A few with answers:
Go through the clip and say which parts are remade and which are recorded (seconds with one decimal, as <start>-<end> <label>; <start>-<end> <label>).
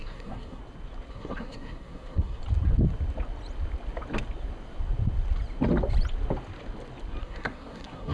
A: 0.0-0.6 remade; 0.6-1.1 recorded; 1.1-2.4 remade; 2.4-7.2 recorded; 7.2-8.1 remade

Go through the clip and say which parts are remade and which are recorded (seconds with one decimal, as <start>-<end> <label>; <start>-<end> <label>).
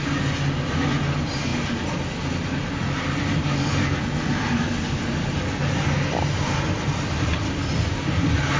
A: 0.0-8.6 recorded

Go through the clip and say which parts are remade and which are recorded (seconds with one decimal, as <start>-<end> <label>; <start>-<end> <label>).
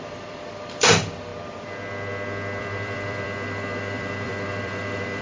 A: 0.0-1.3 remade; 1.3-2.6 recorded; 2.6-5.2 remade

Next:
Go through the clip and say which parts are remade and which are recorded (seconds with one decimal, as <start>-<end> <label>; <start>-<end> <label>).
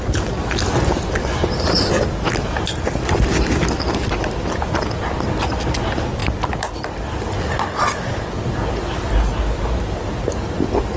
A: 0.0-11.0 recorded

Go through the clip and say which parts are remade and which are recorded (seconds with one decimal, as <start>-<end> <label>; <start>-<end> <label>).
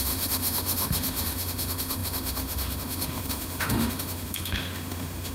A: 0.0-5.3 remade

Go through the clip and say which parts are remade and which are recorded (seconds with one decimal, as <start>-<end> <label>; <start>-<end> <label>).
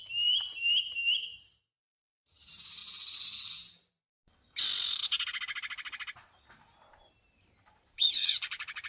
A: 0.0-0.6 recorded; 0.6-2.8 remade; 2.8-6.9 recorded; 6.9-8.9 remade